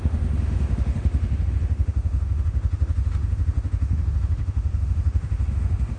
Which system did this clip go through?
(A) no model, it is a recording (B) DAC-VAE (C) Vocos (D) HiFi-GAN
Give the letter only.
B